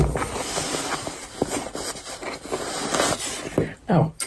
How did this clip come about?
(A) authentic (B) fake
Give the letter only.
A